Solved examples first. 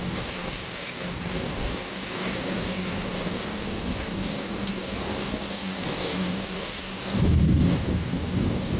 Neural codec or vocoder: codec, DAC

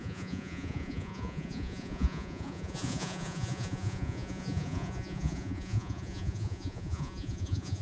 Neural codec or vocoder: vocoder, Vocos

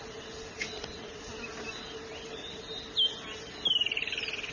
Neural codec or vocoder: none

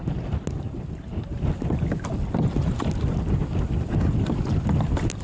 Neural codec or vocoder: none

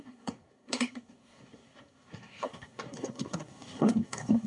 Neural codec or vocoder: codec, SNAC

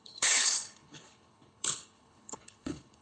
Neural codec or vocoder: codec, HILCodec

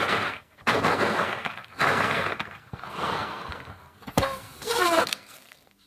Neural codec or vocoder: codec, SNAC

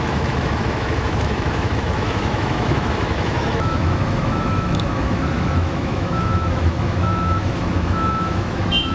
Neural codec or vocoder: autoencoder, DAC-VAE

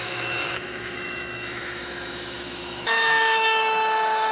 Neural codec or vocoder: autoencoder, DAC-VAE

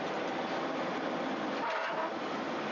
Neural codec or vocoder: none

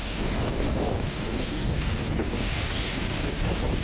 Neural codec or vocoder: codec, DAC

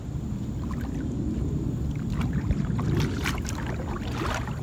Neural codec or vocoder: none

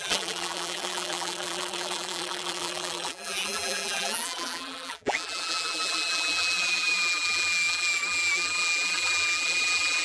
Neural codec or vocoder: vocoder, BigVGAN v2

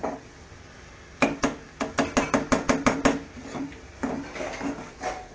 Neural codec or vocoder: none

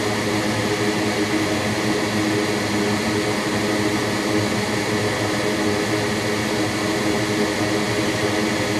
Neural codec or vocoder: none